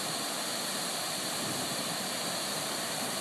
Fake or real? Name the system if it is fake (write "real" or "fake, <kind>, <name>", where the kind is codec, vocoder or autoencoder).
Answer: real